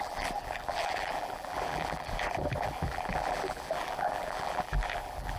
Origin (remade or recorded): remade